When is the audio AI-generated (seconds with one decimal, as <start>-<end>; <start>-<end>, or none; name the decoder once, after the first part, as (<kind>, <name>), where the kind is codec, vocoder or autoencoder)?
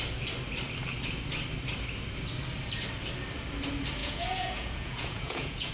4.0-5.7 (vocoder, Vocos)